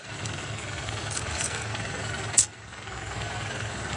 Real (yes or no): no